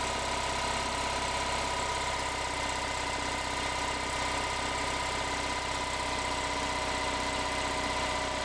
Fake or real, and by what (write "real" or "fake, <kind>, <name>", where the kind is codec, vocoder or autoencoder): real